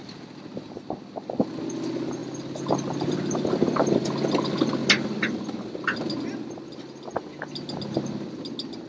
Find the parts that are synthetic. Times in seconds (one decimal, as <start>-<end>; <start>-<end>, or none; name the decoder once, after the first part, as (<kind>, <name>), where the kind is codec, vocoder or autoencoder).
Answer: none